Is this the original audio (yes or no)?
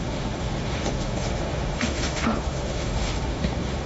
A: no